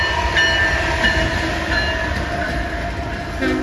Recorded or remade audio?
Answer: recorded